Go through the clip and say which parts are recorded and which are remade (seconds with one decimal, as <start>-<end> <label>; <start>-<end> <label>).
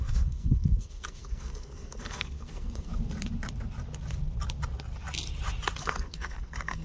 0.0-2.9 remade; 2.9-5.8 recorded; 5.8-6.8 remade